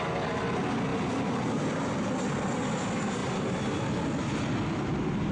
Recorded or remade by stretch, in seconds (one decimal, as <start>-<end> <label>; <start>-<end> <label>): 0.0-3.2 recorded; 3.2-4.4 remade; 4.4-5.3 recorded